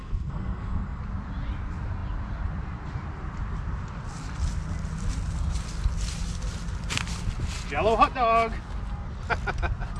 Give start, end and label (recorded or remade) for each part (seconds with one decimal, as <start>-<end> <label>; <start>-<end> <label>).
0.0-1.0 remade; 1.0-10.0 recorded